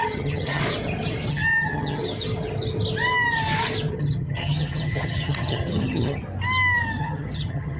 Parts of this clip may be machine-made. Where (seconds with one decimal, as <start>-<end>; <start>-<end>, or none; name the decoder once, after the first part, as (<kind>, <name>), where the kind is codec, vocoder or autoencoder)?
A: 0.0-0.6 (vocoder, HiFi-GAN); 1.3-2.0; 3.9-6.2; 7.0-7.8